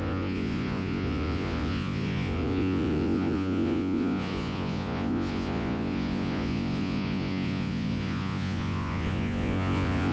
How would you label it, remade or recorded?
remade